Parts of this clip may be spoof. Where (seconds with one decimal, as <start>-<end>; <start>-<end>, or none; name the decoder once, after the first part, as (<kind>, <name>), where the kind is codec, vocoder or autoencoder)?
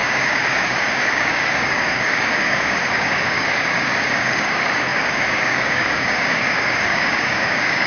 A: 0.0-7.9 (codec, DAC)